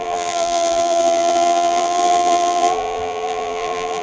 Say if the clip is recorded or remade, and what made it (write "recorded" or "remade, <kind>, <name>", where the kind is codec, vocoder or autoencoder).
remade, vocoder, BigVGAN v2